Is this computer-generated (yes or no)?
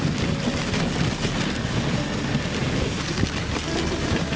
no